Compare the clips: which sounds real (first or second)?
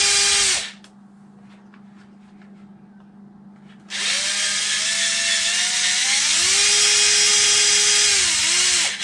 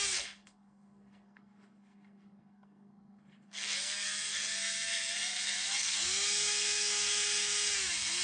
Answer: first